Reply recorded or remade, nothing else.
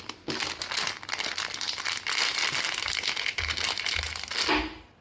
recorded